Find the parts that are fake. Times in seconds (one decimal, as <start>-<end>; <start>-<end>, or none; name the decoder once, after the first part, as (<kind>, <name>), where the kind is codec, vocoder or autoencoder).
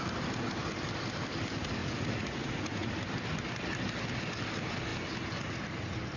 1.8-3.0 (vocoder, Vocos)